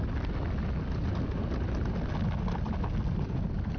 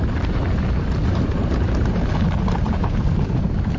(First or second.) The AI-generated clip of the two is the second